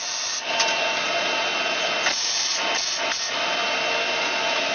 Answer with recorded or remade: recorded